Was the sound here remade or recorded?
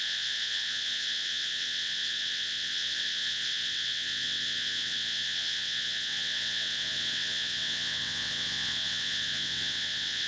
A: remade